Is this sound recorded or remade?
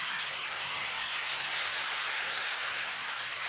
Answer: remade